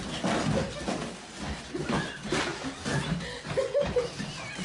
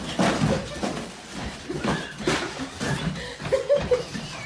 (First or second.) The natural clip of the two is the first